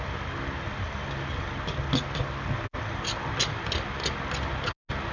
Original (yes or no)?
yes